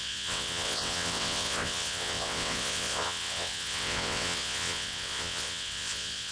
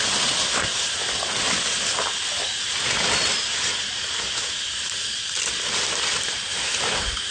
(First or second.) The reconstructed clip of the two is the first